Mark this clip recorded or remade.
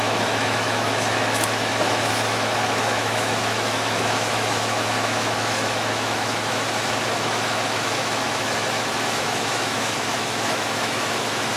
remade